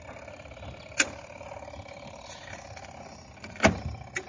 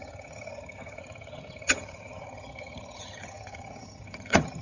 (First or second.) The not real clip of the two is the second